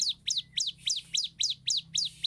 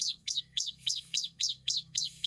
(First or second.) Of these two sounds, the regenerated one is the second